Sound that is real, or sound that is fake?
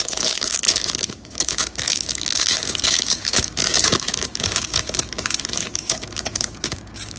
fake